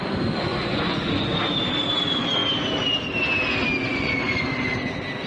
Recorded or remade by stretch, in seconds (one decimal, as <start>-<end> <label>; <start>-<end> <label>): 0.0-0.5 recorded; 0.5-1.3 remade; 1.3-3.9 recorded; 3.9-4.5 remade; 4.5-5.3 recorded